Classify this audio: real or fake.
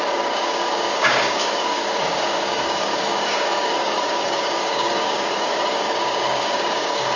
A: fake